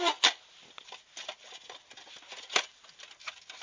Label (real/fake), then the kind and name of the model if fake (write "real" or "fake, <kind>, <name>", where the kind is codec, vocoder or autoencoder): real